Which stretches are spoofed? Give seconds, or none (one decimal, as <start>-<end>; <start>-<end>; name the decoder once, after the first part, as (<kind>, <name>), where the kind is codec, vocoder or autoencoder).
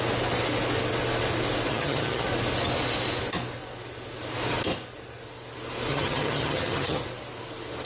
1.7-2.3 (vocoder, HiFi-GAN); 5.9-7.0